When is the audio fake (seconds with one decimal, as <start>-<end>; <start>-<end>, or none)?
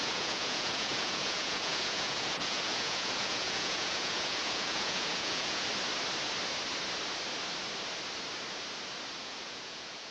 0.0-5.7; 9.2-10.1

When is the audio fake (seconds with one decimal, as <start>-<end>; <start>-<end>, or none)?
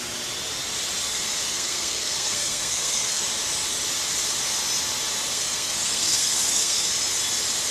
1.1-3.2; 5.3-6.9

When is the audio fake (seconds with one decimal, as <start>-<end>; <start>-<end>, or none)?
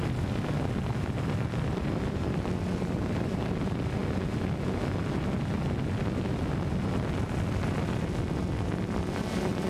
0.0-4.0; 9.2-9.7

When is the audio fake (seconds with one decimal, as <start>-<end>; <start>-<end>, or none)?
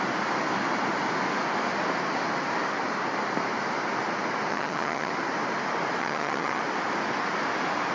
4.5-5.1; 6.0-6.6